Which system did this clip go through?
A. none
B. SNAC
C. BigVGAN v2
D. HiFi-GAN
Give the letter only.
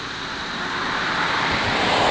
A